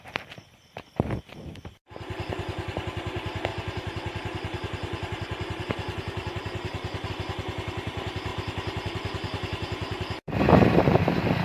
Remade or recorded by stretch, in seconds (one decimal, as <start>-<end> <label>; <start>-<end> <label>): 0.0-3.5 recorded; 3.5-7.1 remade; 7.1-8.3 recorded; 8.3-10.4 remade; 10.4-11.4 recorded